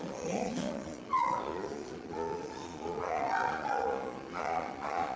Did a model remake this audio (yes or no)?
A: yes